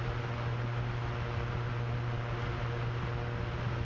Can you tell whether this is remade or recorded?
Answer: recorded